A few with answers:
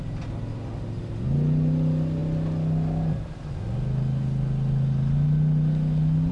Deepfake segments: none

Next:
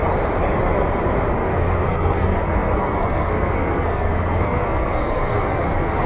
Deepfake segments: 1.3-6.1 (codec, SNAC)

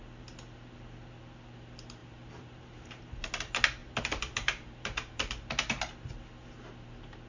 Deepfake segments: 2.0-3.0 (vocoder, BigVGAN v2); 3.8-5.5

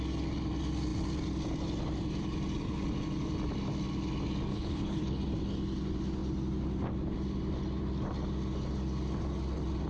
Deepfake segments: 4.5-5.2 (codec, HILCodec)